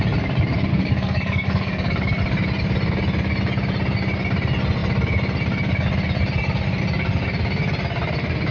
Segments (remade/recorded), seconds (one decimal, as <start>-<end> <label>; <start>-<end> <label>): 0.0-0.7 recorded; 0.7-2.2 remade; 2.2-8.5 recorded